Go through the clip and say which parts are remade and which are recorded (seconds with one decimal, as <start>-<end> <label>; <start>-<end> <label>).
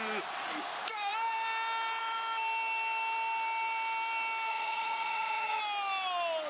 0.0-4.5 recorded; 4.5-5.6 remade; 5.6-6.5 recorded